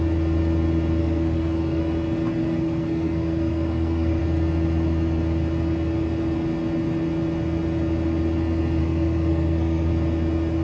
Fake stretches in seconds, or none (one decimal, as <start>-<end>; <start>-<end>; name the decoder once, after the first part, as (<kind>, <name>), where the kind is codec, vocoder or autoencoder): 1.0-1.8 (codec, SNAC); 2.4-4.2; 8.8-9.9